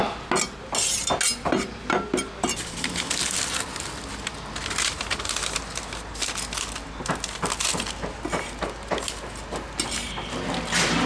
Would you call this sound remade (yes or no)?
no